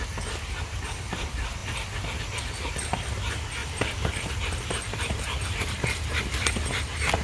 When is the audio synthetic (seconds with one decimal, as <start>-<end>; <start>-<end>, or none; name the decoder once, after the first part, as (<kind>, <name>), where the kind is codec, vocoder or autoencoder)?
3.6-6.2 (vocoder, BigVGAN v2)